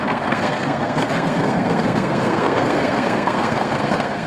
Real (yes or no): no